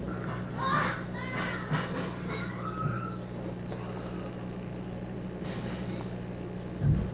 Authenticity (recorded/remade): recorded